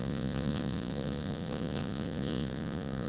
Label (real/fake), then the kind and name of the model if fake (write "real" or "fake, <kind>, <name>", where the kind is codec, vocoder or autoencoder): fake, vocoder, Vocos